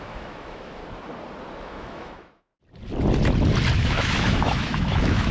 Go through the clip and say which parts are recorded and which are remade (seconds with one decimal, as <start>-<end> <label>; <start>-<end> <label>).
0.0-0.8 remade; 0.8-1.6 recorded; 1.6-2.5 remade; 2.5-3.8 recorded; 3.8-5.3 remade